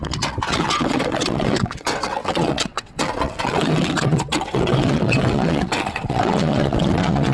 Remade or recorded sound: remade